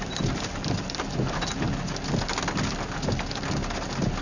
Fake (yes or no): no